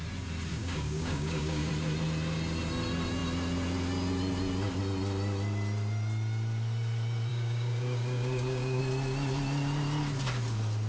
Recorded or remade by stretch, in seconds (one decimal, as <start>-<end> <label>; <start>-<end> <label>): 0.0-0.5 recorded; 0.5-1.7 remade; 1.7-7.3 recorded; 7.3-8.8 remade; 8.8-10.9 recorded